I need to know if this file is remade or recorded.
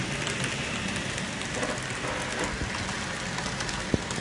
recorded